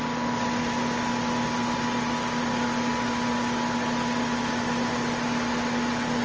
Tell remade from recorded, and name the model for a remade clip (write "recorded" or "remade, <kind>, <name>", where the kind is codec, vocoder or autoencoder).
recorded